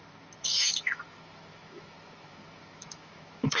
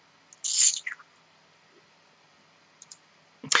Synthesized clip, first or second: first